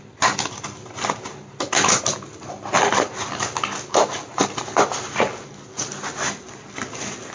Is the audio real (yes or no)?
yes